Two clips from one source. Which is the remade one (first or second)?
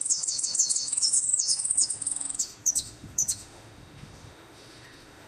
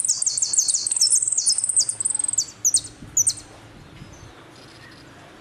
first